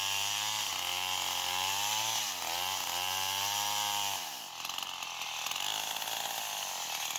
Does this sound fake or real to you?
real